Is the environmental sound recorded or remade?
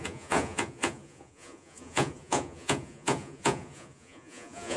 remade